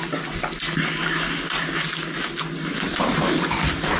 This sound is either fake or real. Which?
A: real